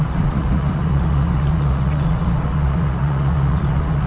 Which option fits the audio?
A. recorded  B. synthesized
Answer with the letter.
B